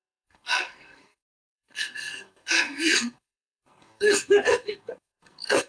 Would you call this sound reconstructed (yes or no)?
yes